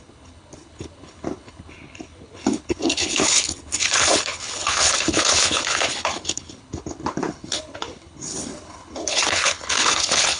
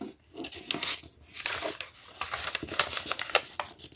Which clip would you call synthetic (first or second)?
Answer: first